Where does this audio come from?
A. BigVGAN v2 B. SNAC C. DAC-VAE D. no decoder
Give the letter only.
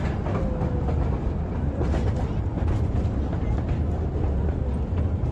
D